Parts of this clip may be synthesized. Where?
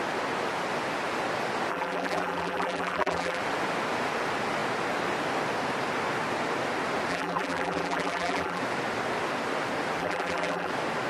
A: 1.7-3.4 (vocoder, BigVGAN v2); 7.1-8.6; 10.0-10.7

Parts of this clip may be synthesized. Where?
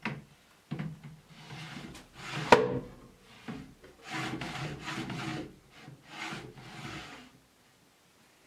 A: none